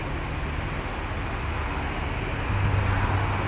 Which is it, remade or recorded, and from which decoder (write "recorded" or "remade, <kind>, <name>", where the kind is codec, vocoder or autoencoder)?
recorded